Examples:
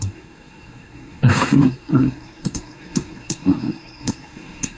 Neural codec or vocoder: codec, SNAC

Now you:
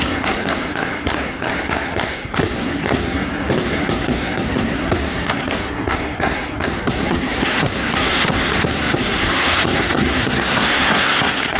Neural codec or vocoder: codec, SNAC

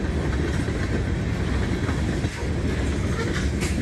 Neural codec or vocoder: none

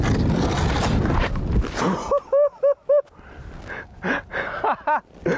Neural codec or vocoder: none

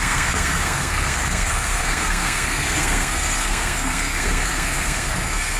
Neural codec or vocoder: codec, SNAC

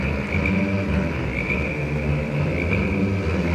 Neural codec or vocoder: none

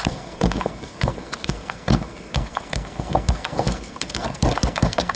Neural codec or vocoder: codec, SNAC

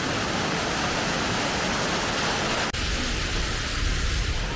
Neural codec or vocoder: none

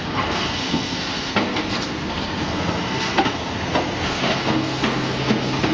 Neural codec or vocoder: codec, SNAC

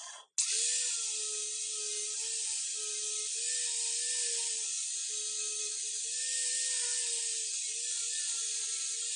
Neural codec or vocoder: none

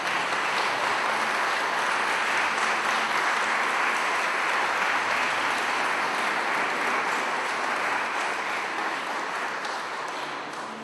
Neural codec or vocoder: none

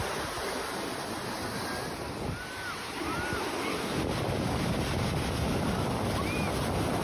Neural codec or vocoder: none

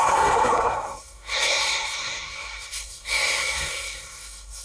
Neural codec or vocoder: codec, SNAC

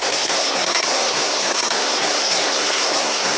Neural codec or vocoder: codec, SNAC